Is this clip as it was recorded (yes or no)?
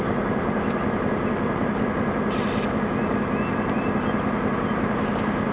yes